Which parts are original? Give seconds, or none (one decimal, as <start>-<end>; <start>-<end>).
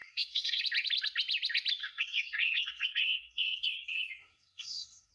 0.6-1.8